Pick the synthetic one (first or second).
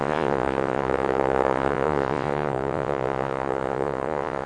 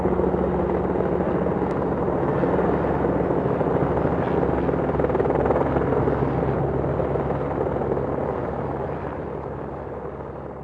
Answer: first